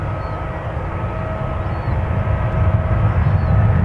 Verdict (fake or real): real